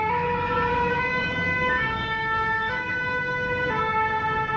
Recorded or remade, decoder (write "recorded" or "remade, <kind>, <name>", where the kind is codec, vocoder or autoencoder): remade, autoencoder, DAC-VAE